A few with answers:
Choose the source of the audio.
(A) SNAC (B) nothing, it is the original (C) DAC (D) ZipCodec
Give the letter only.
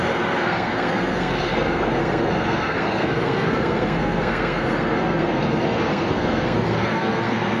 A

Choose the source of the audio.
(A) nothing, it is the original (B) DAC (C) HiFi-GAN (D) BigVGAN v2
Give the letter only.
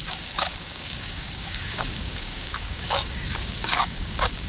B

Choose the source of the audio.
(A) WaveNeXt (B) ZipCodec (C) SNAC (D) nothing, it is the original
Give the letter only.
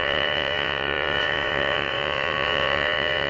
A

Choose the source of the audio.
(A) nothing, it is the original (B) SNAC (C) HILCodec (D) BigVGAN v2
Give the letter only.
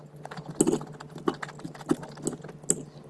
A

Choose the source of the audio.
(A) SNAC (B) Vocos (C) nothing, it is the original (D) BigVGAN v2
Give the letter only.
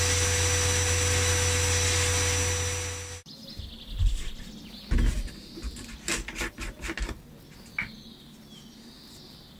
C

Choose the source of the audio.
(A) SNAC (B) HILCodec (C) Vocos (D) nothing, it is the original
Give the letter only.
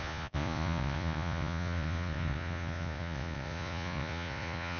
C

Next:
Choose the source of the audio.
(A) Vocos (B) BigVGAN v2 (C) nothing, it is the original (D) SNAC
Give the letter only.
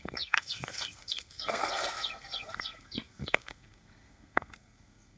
D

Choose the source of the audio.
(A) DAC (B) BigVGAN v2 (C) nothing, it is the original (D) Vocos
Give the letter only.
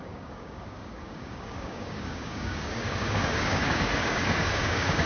A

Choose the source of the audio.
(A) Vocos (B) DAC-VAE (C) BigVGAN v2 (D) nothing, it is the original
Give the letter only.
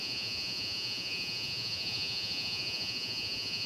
A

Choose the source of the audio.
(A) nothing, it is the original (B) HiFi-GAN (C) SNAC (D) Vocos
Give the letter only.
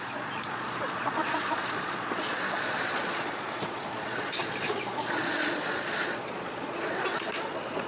D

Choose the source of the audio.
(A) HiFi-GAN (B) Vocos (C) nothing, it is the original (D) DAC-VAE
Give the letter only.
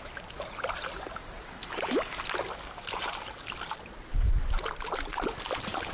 C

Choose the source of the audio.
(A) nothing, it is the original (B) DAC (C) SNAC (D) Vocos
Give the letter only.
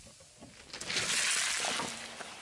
A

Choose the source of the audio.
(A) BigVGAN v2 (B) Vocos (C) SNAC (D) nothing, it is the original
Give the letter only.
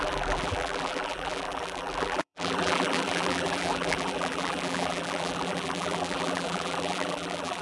A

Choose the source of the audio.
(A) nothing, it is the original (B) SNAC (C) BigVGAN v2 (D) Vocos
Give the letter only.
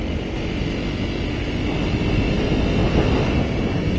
A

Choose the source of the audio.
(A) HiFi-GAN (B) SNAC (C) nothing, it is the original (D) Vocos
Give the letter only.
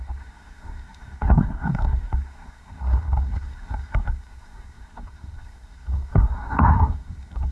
B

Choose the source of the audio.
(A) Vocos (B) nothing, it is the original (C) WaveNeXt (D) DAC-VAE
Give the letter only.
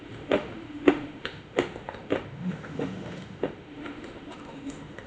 D